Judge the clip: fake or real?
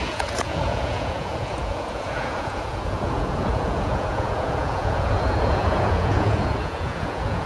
fake